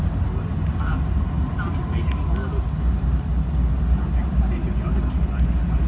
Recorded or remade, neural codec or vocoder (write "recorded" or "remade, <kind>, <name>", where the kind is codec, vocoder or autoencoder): recorded